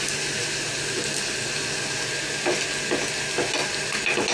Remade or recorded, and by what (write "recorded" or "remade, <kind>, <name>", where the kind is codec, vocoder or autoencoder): recorded